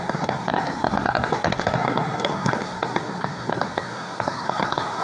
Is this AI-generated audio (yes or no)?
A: yes